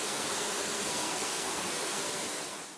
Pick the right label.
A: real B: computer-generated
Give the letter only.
B